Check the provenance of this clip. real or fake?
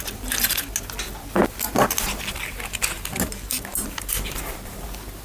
real